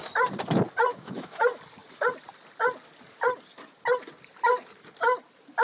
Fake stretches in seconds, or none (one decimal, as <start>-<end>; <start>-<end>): 0.9-1.4